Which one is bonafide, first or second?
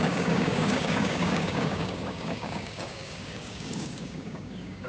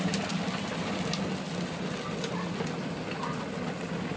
second